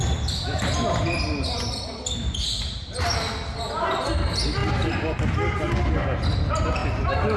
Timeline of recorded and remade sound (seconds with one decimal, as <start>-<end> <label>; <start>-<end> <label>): 0.0-7.4 recorded